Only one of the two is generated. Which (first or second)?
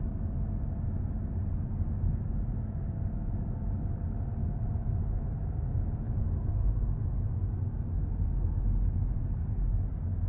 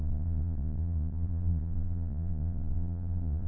second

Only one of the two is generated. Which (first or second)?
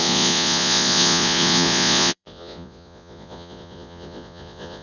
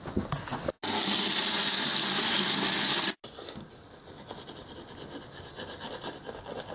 first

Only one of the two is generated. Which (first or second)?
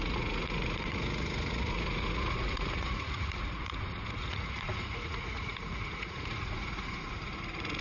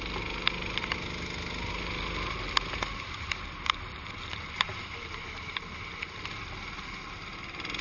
first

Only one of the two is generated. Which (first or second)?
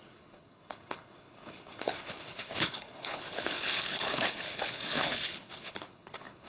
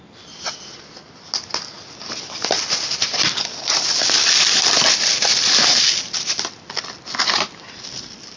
first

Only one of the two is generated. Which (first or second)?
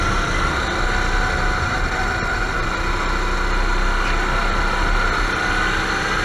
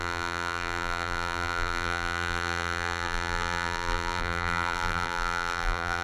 second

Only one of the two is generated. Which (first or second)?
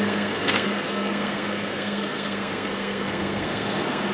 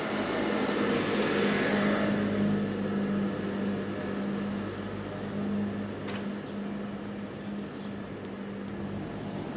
first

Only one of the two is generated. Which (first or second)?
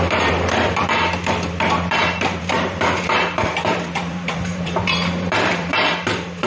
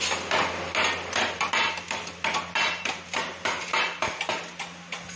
first